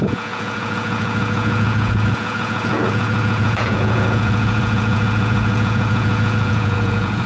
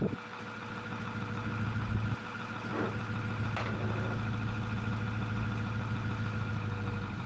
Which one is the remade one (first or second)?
first